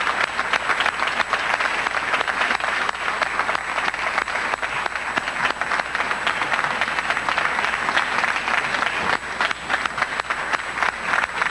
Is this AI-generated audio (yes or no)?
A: no